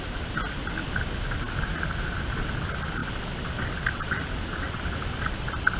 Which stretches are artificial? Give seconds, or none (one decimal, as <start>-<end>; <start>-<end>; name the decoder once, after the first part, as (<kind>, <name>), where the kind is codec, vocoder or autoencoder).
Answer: none